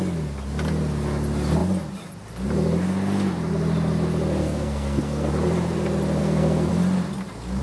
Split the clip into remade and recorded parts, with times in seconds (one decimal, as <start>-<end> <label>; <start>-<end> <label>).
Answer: 0.0-4.4 recorded; 4.4-5.3 remade; 5.3-6.2 recorded; 6.2-6.7 remade; 6.7-7.6 recorded